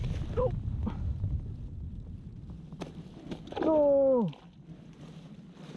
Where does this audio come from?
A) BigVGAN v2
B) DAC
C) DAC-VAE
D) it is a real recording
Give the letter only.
D